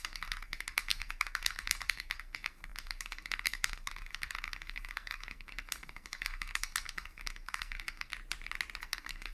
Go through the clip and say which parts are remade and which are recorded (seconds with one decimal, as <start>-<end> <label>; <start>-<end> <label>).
0.0-8.1 remade; 8.1-8.8 recorded; 8.8-9.3 remade